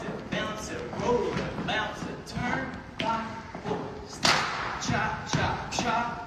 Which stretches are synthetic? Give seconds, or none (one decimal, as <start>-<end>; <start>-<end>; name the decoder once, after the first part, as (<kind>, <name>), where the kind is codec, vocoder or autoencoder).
none

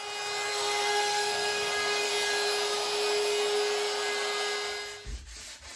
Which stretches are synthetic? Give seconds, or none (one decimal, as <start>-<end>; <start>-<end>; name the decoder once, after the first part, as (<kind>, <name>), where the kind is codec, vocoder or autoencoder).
0.5-2.1 (codec, SNAC)

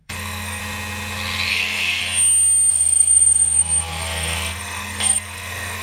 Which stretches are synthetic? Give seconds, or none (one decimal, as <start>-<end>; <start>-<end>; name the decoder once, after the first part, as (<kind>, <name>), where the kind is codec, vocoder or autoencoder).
0.0-0.6 (codec, SNAC); 1.5-2.0; 2.7-5.8

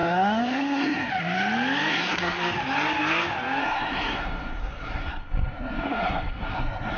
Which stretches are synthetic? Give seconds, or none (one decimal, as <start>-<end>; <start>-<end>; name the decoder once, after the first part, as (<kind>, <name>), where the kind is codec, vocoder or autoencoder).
0.0-1.1 (codec, SNAC); 1.9-2.4; 3.6-7.0

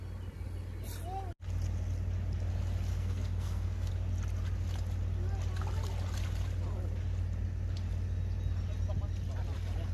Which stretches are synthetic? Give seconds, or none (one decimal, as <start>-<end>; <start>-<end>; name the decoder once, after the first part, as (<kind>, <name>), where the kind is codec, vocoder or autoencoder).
2.9-3.9 (codec, SNAC)

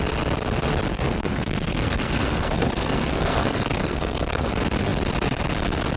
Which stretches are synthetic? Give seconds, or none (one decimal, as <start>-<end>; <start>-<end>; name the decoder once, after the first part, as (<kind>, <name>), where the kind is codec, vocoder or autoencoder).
0.9-4.5 (codec, SNAC)